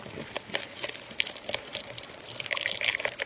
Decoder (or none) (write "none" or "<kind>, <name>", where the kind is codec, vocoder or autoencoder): vocoder, BigVGAN v2